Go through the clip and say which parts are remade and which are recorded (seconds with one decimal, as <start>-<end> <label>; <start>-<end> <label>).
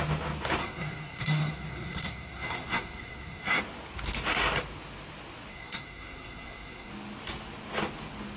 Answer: 0.0-0.6 recorded; 0.6-3.6 remade; 3.6-5.5 recorded; 5.5-6.9 remade; 6.9-8.4 recorded